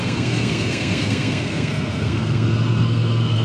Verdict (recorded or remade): remade